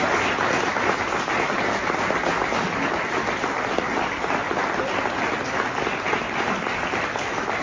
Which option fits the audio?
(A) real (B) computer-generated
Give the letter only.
A